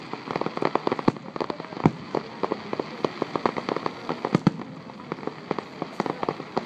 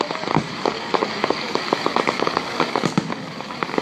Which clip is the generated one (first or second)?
second